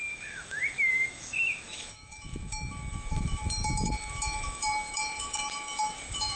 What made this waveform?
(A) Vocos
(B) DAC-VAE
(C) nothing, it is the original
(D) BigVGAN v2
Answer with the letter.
B